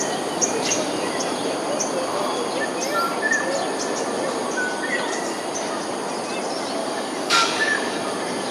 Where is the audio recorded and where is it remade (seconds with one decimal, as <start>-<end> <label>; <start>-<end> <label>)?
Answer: 0.0-6.8 recorded; 6.8-7.9 remade; 7.9-8.5 recorded